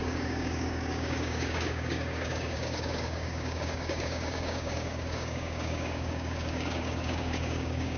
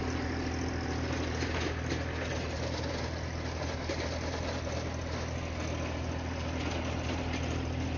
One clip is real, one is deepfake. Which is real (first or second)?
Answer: second